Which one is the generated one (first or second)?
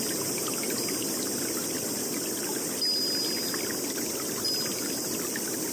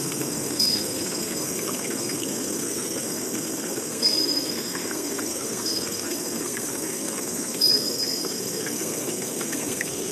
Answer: second